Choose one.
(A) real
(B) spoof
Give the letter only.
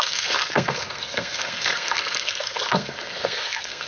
B